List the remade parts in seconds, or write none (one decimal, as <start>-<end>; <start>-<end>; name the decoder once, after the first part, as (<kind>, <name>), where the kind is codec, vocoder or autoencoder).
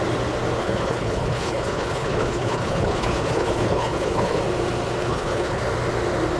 0.6-4.4 (codec, HILCodec); 5.0-5.6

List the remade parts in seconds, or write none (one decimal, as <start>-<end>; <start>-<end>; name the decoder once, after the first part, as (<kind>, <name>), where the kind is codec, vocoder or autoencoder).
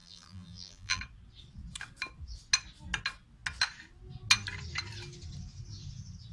0.0-1.0 (vocoder, BigVGAN v2)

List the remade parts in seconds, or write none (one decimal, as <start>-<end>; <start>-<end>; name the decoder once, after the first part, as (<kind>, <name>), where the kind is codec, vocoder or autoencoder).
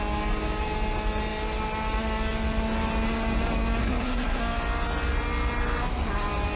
3.8-4.4 (codec, SNAC)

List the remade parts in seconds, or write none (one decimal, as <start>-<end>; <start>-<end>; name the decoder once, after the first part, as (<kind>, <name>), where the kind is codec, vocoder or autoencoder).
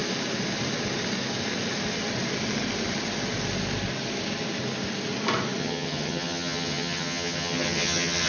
5.6-8.3 (vocoder, HiFi-GAN)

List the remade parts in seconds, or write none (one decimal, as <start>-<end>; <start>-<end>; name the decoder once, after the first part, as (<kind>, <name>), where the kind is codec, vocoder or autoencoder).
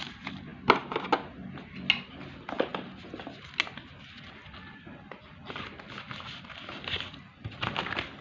none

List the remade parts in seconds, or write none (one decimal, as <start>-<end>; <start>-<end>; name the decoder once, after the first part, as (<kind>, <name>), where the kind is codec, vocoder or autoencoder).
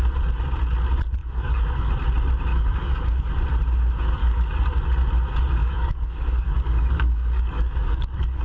1.2-1.9 (codec, DAC); 2.5-3.3; 4.2-4.7; 5.6-8.4